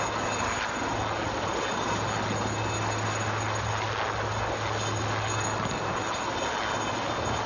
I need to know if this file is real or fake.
real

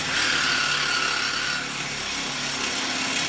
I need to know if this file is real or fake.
real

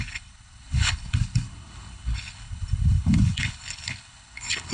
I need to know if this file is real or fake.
fake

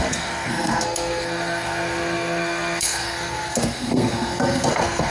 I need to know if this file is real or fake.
fake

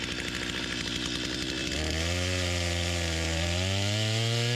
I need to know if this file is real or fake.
real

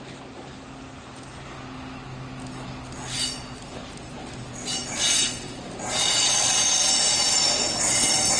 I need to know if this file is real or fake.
real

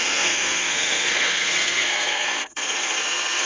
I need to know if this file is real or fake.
fake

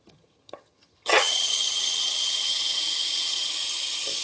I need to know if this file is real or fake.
fake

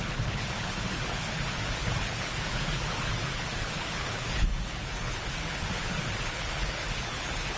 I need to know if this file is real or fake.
fake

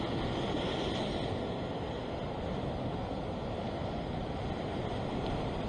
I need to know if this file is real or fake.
real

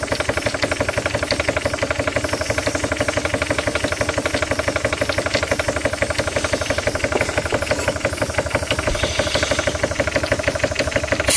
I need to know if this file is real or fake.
real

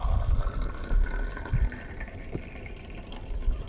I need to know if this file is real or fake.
fake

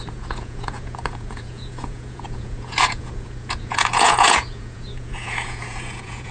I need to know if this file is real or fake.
fake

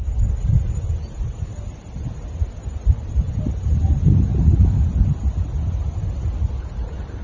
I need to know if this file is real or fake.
real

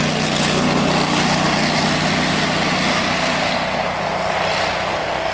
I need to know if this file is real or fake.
real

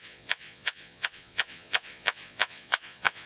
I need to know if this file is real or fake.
fake